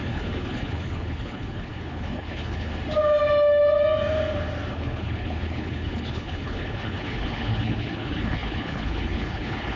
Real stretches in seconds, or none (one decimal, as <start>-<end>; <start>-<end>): 2.7-4.7